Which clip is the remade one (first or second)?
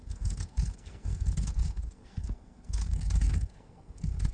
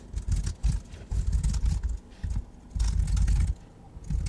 first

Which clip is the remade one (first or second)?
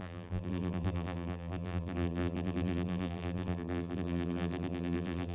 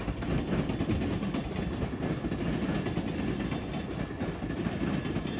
first